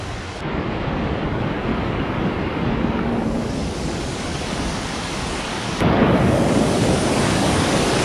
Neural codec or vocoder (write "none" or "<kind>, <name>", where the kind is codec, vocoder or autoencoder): codec, DAC